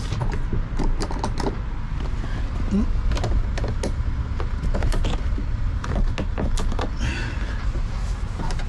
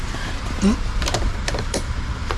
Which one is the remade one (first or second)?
second